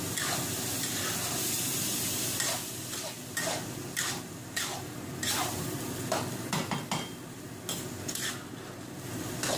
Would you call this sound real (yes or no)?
yes